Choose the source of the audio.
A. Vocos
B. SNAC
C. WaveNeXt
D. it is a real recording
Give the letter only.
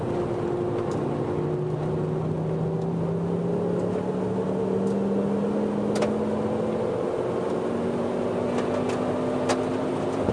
D